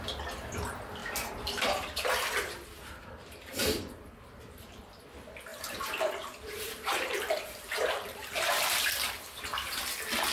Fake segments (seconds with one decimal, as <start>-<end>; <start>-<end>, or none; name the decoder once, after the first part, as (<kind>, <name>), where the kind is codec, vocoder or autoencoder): 1.0-3.1 (vocoder, BigVGAN v2); 3.6-4.8; 5.5-9.8